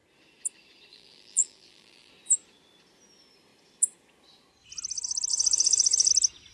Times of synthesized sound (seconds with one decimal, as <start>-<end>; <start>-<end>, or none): 0.9-2.1; 5.3-6.1